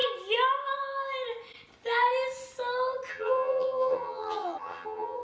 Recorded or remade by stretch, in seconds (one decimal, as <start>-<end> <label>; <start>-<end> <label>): 0.0-3.1 recorded; 3.1-5.2 remade